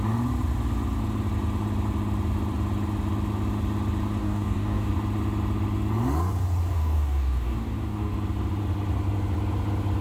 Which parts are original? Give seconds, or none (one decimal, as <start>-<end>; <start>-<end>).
0.0-4.2; 4.9-6.7; 8.1-10.0